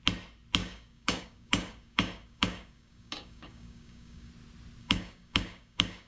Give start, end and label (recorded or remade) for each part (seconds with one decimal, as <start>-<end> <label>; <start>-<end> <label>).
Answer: 0.0-0.6 recorded; 0.6-4.3 remade; 4.3-4.8 recorded; 4.8-6.1 remade